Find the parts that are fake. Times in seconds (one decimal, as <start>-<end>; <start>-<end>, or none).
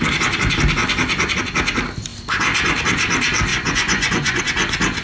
3.5-4.4